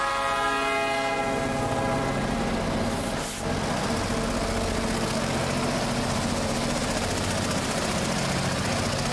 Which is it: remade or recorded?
recorded